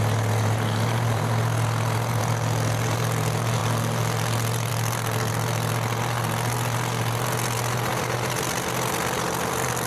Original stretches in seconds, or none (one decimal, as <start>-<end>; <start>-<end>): 0.0-9.9